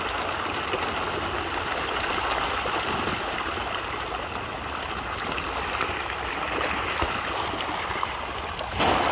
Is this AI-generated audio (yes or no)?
no